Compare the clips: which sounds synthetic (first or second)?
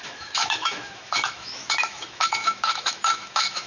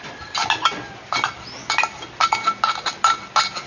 first